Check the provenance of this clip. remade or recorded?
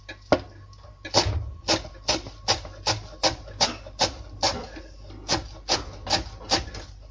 recorded